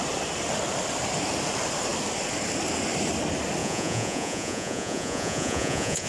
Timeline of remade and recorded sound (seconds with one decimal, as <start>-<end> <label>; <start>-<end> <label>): 0.0-3.6 recorded; 3.6-6.1 remade